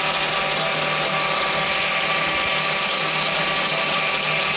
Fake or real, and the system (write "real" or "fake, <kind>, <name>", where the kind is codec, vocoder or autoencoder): real